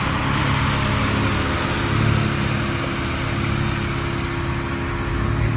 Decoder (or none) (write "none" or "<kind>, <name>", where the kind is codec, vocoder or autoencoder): none